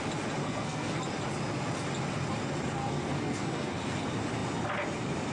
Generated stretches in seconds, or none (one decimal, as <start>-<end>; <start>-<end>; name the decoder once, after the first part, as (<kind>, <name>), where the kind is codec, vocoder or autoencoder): 0.4-1.0 (codec, SNAC); 2.8-4.0